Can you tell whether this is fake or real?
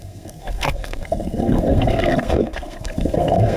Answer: fake